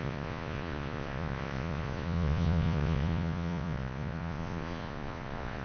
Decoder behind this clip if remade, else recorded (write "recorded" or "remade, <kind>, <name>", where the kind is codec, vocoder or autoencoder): remade, vocoder, Vocos